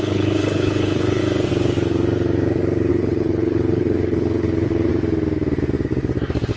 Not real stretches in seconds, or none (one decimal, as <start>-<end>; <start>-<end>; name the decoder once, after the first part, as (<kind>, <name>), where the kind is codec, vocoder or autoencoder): 0.0-1.2 (codec, HILCodec); 2.9-4.9